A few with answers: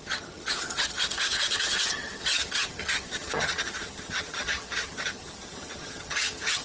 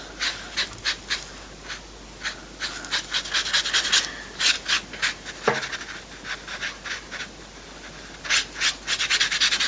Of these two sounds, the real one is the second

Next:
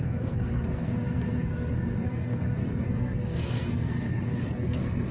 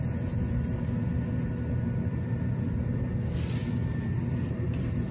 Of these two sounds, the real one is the second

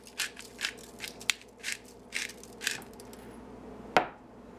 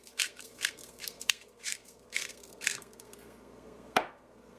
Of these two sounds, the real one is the first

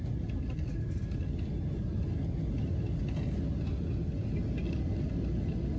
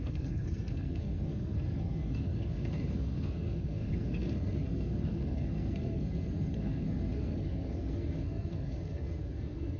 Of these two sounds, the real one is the first